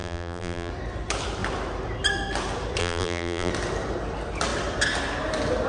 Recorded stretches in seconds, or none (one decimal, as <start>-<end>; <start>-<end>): 0.7-2.8; 3.5-5.7